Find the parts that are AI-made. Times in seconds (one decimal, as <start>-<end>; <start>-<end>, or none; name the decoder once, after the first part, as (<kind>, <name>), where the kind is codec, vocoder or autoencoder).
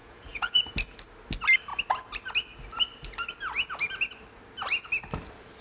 0.0-0.7 (vocoder, Vocos)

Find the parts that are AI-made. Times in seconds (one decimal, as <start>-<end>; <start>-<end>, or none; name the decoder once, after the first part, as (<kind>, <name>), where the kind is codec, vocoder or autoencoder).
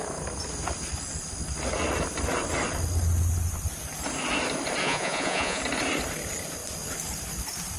4.8-5.6 (vocoder, Vocos)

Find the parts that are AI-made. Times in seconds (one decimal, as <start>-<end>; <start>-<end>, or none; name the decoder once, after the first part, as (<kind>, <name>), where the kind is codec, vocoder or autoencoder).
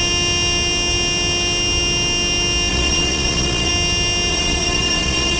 2.7-3.7 (vocoder, Vocos); 4.3-5.4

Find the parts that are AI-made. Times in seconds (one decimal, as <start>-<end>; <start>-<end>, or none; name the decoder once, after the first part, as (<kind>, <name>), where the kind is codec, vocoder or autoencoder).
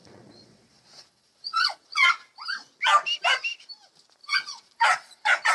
0.0-2.1 (vocoder, Vocos); 4.2-5.5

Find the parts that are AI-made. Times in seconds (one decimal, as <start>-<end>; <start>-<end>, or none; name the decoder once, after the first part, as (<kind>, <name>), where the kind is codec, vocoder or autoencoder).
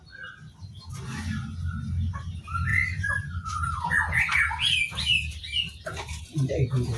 2.7-3.5 (vocoder, Vocos)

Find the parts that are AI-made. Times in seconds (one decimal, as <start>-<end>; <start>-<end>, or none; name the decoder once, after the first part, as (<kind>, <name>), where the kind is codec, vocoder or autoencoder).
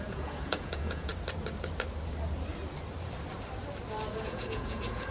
0.0-1.1 (vocoder, Vocos); 4.2-5.1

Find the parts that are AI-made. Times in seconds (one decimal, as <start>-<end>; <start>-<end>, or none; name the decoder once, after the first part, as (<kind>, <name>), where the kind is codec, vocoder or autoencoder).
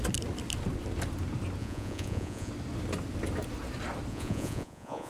1.6-2.5 (vocoder, Vocos); 4.1-5.1